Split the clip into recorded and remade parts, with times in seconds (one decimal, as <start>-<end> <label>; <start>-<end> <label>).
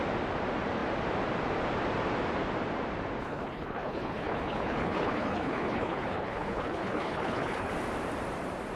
0.0-3.2 recorded; 3.2-7.7 remade; 7.7-8.8 recorded